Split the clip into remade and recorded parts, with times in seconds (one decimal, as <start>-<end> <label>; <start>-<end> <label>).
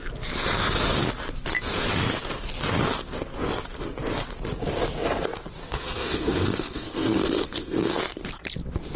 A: 0.0-5.6 recorded; 5.6-8.0 remade; 8.0-9.0 recorded